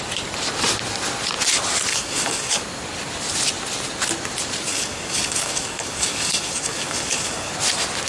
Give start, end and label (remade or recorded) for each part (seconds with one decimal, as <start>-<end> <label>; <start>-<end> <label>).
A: 0.0-1.9 recorded; 1.9-2.6 remade; 2.6-4.7 recorded; 4.7-7.5 remade; 7.5-8.1 recorded